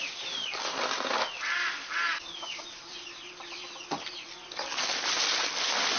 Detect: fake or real real